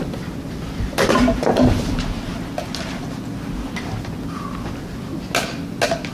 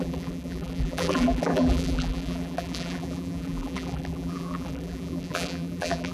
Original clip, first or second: first